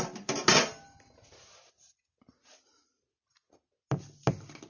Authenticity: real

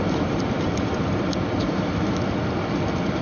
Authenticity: real